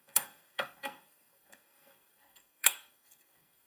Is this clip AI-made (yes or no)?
yes